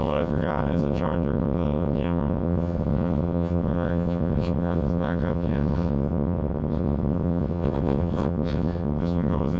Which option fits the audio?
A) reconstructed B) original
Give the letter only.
A